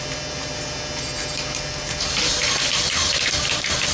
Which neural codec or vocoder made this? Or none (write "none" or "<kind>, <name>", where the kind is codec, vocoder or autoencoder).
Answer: none